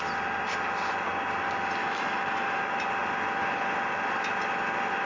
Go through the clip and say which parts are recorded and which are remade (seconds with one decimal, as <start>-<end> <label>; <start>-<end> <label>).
0.0-1.8 recorded; 1.8-2.6 remade; 2.6-5.1 recorded